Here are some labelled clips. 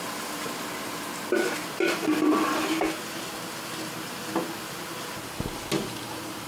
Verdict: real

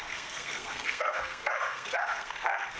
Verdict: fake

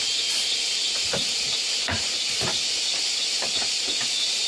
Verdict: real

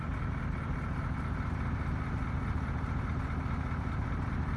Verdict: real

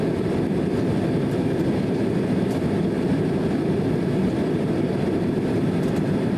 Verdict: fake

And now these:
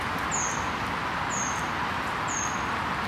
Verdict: real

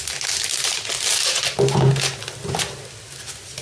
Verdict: real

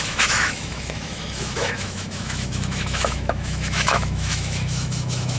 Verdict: fake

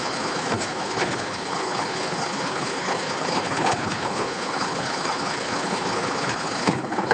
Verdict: fake